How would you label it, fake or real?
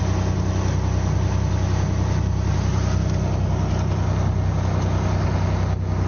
real